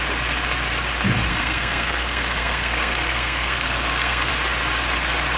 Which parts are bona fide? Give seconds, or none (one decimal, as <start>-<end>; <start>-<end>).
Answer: 0.0-1.3; 4.3-5.4